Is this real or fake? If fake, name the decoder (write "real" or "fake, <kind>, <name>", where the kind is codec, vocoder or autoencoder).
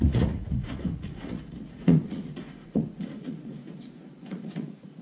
fake, vocoder, Vocos